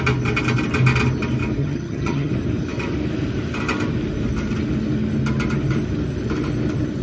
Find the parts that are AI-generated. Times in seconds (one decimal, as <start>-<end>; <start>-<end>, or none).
1.6-2.3